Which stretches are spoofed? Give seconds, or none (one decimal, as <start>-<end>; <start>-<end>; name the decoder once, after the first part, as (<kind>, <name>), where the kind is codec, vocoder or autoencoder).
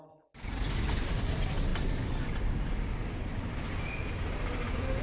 none